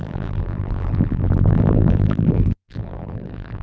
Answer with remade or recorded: remade